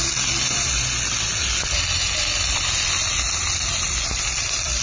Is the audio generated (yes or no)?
no